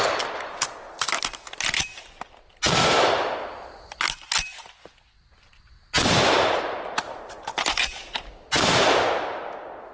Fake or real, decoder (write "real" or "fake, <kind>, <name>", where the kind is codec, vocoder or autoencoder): real